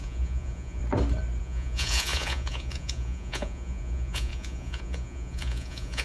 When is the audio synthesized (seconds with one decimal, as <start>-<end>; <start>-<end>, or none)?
0.0-0.8; 1.4-6.0